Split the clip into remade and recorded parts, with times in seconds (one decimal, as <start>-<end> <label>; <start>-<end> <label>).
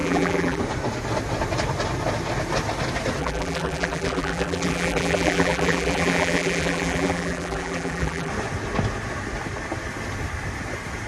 0.0-0.6 remade; 0.6-3.2 recorded; 3.2-8.3 remade; 8.3-11.1 recorded